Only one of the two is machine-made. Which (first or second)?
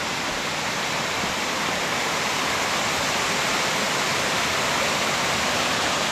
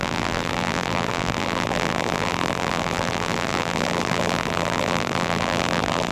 second